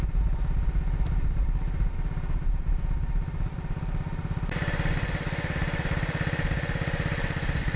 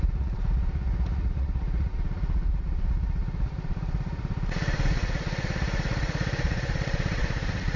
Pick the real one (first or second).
first